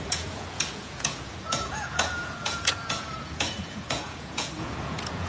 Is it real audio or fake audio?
fake